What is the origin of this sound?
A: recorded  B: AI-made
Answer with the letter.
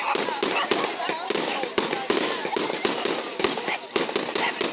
A